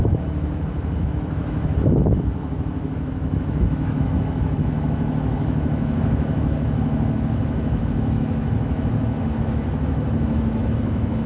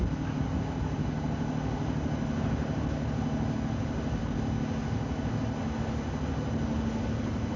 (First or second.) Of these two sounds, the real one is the second